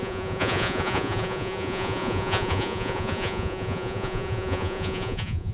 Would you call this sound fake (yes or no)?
yes